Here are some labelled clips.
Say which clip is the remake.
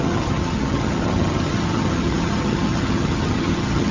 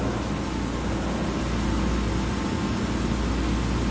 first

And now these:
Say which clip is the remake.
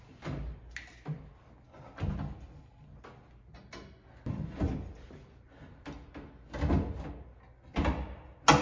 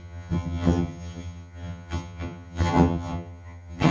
second